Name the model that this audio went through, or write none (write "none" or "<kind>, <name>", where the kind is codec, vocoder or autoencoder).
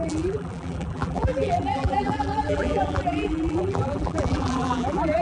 vocoder, BigVGAN v2